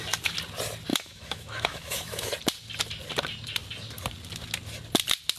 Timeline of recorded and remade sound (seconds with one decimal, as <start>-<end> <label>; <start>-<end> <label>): 0.0-0.9 recorded; 0.9-2.3 remade; 2.3-5.4 recorded